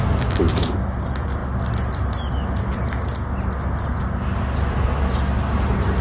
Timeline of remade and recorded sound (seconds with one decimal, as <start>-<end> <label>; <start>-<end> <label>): 0.0-6.0 recorded